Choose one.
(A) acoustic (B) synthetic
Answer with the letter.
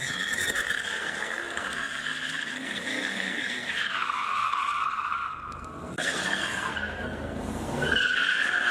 B